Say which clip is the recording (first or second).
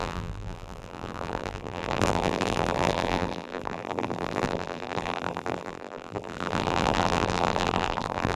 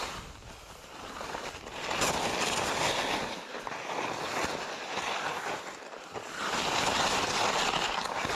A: second